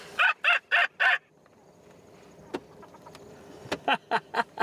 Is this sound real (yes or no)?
yes